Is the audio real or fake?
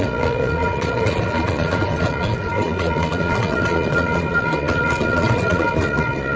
fake